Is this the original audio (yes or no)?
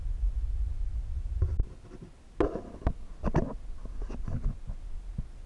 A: yes